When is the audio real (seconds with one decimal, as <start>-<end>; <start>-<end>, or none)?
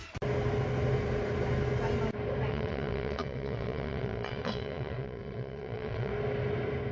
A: 0.0-2.5; 6.1-6.9